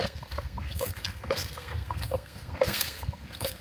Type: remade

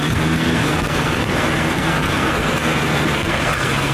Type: remade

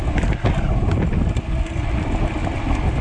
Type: recorded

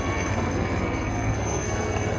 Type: remade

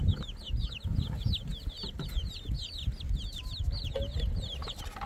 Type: recorded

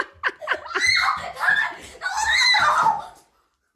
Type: recorded